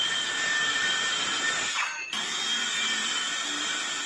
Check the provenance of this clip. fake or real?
fake